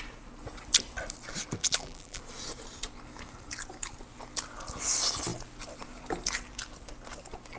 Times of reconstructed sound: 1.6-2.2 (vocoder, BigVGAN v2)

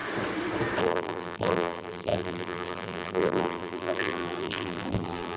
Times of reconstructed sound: 0.8-5.4 (vocoder, BigVGAN v2)